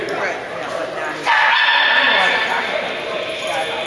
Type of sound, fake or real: real